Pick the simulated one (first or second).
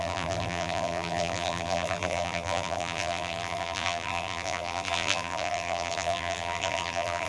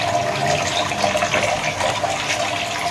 first